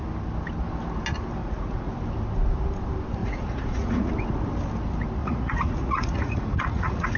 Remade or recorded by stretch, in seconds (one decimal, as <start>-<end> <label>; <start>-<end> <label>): 0.0-1.4 recorded; 1.4-1.9 remade; 1.9-3.2 recorded; 3.2-4.1 remade; 4.1-5.2 recorded; 5.2-7.2 remade